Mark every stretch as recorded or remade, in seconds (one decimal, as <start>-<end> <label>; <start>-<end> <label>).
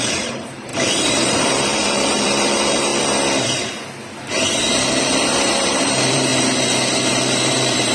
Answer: 0.0-2.9 remade; 2.9-5.0 recorded; 5.0-6.3 remade; 6.3-7.5 recorded; 7.5-7.9 remade